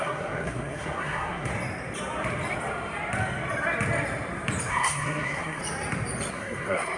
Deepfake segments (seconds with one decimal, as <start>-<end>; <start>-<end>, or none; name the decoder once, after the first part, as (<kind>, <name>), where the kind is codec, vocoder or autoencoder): 0.0-1.5 (codec, SNAC); 4.7-5.6; 6.3-7.0